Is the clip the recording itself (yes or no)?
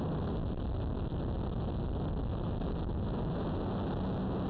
yes